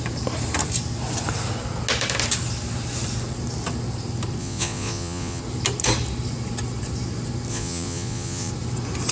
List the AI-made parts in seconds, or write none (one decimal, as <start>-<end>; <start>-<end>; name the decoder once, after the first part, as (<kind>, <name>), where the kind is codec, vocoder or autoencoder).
4.4-5.4 (vocoder, Vocos); 7.5-8.5